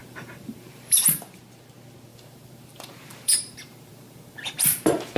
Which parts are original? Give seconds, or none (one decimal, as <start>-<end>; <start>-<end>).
1.0-2.1